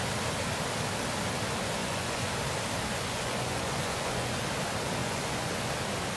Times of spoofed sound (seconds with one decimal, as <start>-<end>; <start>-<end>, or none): 1.8-2.3; 2.9-4.5; 5.0-5.7